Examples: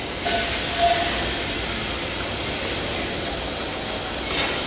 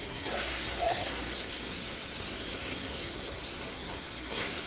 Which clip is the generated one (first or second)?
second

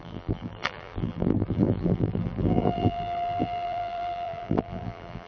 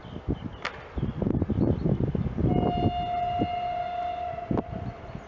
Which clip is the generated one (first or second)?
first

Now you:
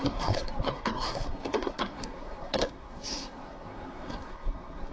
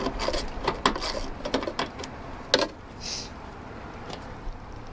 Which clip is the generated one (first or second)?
first